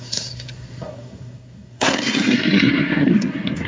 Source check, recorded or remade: remade